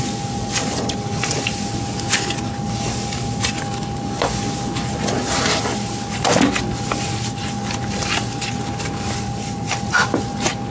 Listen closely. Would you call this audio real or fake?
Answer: real